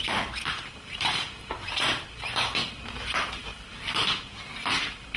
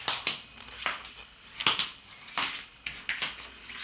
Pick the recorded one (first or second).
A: second